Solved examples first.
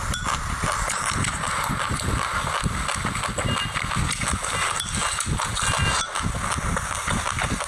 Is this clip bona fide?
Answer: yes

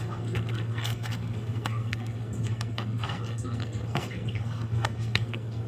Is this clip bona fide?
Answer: no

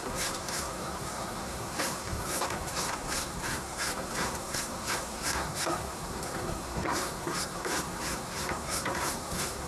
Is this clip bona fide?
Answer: no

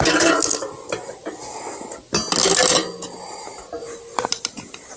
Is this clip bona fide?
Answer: yes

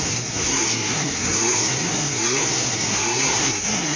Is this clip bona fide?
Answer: no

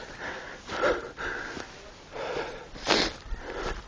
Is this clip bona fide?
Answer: yes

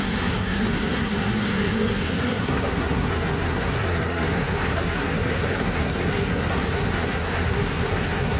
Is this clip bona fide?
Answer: no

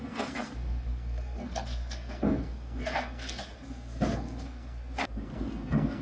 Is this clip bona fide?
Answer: no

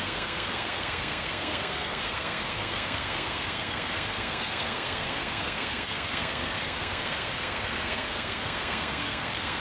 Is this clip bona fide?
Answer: no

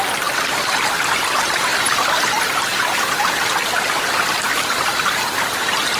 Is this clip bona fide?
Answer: yes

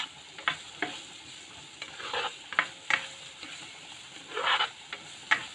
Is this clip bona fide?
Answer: yes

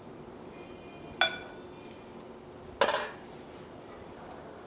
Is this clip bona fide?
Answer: yes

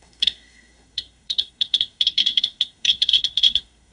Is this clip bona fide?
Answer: no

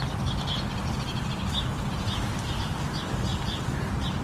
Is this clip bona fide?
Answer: yes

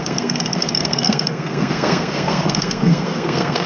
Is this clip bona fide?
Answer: no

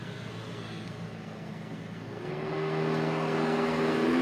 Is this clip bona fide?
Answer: no